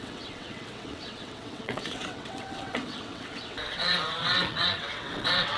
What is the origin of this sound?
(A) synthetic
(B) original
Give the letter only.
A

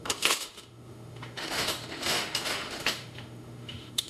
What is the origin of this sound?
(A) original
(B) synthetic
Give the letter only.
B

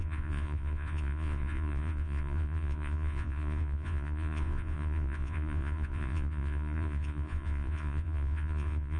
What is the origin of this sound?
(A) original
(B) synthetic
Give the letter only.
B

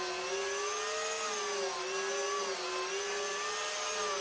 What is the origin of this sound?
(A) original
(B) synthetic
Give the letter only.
A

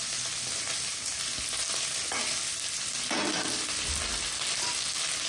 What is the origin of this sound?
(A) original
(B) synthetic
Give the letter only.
A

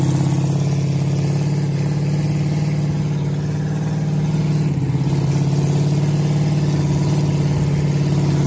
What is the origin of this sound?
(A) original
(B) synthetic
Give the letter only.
A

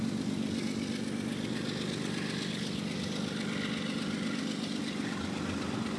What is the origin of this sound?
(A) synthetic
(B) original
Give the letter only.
B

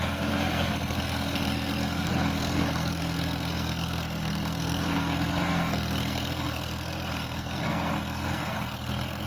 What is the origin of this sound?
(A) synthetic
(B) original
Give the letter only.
A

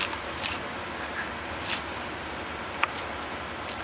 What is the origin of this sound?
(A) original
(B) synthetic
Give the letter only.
A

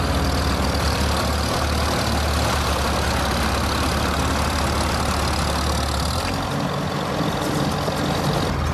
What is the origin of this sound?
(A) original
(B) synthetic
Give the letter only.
A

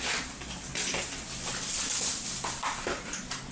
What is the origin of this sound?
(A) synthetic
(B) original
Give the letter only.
B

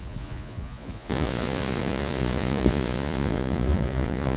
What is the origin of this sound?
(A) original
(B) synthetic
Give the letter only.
B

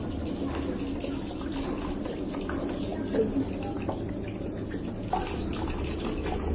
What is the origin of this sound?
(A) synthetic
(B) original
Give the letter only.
B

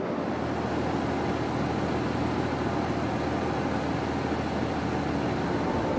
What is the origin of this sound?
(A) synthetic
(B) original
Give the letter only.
B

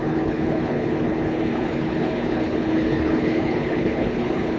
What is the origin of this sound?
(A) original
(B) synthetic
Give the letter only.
B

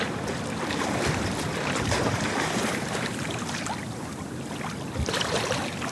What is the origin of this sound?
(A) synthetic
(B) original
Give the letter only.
A